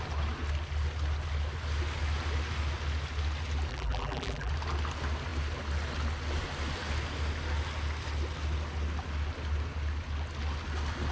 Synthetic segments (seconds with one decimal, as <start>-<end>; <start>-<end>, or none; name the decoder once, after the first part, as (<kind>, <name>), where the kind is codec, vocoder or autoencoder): 3.7-4.5 (vocoder, BigVGAN v2)